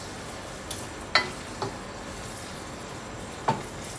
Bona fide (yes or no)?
yes